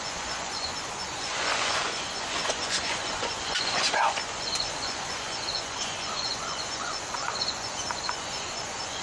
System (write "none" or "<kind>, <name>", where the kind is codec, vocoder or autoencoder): vocoder, Vocos